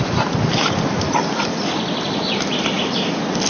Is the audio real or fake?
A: real